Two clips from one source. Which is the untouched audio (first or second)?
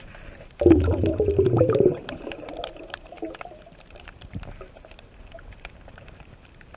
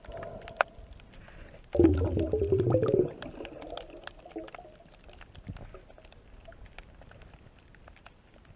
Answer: second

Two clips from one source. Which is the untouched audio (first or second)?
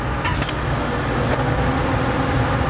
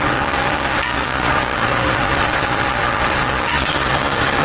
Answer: first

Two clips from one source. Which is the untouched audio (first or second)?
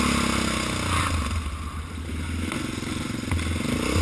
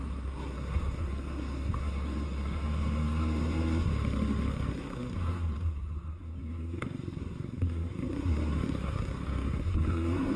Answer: first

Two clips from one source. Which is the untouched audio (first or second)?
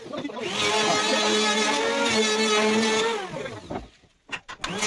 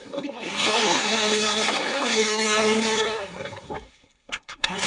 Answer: first